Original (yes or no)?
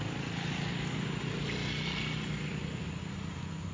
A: yes